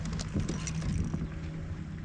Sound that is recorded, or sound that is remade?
recorded